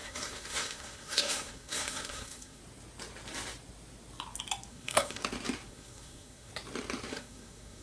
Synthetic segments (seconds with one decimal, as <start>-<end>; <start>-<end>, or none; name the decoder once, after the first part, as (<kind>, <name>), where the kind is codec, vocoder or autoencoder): 0.0-2.6 (codec, SNAC); 4.7-5.2; 5.7-6.5; 7.1-7.8